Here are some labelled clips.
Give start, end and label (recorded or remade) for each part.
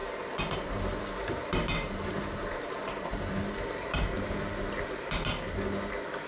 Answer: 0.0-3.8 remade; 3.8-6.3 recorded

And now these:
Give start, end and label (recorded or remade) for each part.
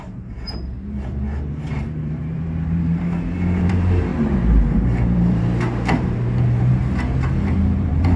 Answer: 0.0-4.1 remade; 4.1-4.7 recorded; 4.7-6.8 remade; 6.8-7.3 recorded; 7.3-8.2 remade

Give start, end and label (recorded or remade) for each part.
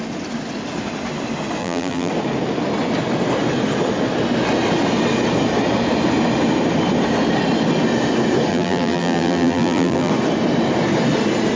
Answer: 0.0-1.6 recorded; 1.6-2.1 remade; 2.1-8.5 recorded; 8.5-10.1 remade; 10.1-11.6 recorded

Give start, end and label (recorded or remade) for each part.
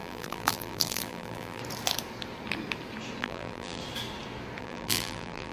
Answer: 0.0-1.6 remade; 1.6-3.2 recorded; 3.2-3.8 remade; 3.8-4.6 recorded; 4.6-5.5 remade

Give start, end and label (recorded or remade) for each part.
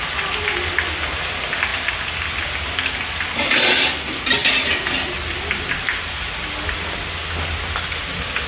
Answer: 0.0-8.5 recorded